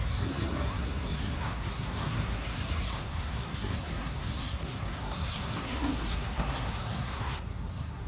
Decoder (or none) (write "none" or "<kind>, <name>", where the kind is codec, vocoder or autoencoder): codec, SNAC